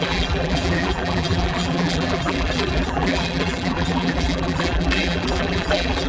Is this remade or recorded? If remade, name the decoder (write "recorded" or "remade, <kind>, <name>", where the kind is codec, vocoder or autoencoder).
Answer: remade, vocoder, BigVGAN v2